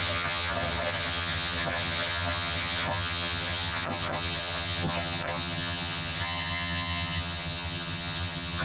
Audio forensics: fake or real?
fake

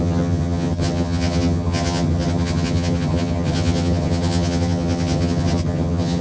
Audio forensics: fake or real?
fake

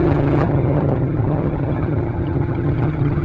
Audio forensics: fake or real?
fake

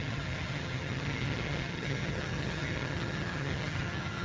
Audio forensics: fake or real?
fake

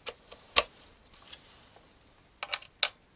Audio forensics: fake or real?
real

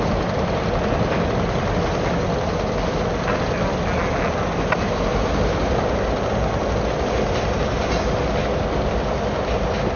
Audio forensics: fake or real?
real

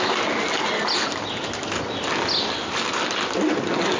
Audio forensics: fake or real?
real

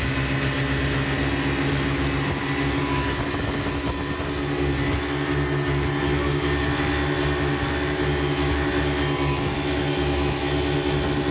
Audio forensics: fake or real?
real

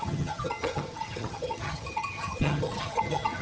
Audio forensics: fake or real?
fake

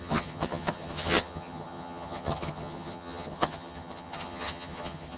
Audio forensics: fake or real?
fake